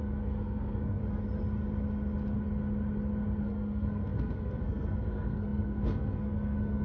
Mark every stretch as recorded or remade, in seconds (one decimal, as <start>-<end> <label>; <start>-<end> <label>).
0.0-1.0 remade; 1.0-3.4 recorded; 3.4-6.8 remade